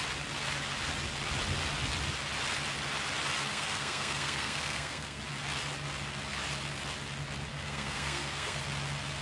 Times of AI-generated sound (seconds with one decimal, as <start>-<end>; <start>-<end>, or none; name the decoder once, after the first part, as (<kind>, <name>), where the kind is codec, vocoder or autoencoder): 3.5-5.2 (codec, SNAC); 7.5-8.6